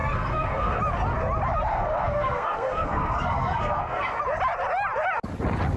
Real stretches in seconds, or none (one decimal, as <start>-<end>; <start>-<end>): 0.8-1.7; 4.2-5.8